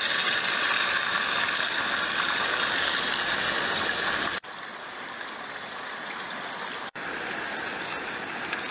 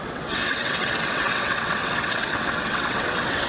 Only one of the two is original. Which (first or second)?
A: first